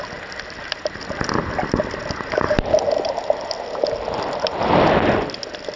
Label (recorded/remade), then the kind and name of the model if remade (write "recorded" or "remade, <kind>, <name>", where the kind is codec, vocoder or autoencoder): recorded